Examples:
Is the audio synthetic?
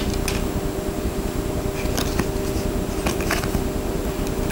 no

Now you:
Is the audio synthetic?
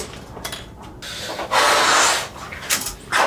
no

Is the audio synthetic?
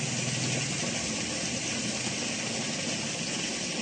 no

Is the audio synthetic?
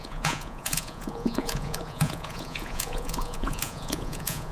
yes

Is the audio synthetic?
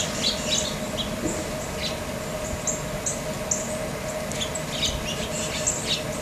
no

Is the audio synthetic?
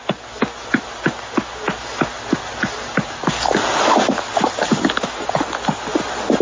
no